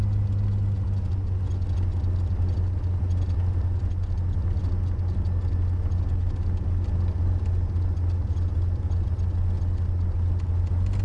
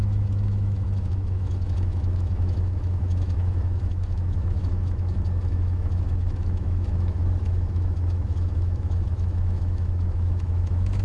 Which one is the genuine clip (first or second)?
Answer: first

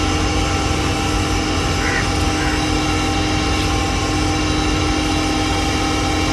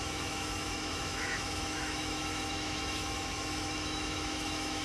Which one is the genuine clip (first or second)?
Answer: first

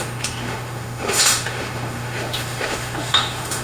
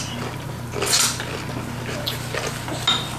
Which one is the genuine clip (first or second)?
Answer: second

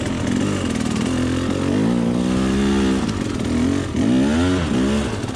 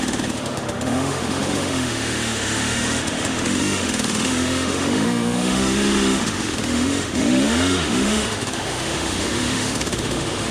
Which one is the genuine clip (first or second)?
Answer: first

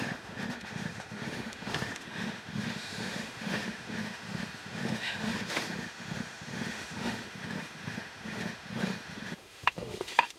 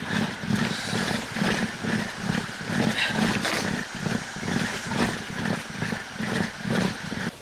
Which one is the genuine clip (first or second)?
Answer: second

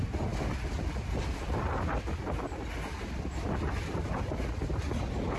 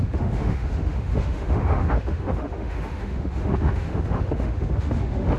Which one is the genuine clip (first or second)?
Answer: first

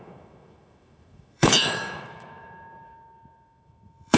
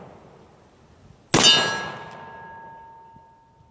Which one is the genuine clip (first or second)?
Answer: second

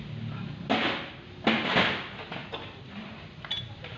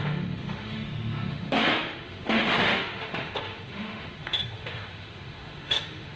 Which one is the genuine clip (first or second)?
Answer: first